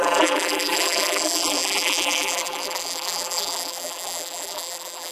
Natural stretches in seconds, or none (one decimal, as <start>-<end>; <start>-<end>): none